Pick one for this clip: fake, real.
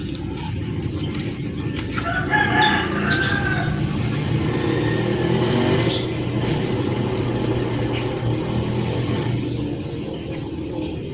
real